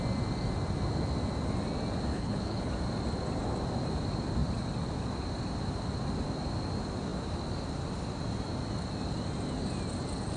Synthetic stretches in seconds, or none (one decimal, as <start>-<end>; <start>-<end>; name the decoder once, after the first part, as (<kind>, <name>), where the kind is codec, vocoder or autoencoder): 2.1-2.7 (codec, HILCodec)